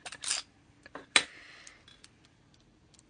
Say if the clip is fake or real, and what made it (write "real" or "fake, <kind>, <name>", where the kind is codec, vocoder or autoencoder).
real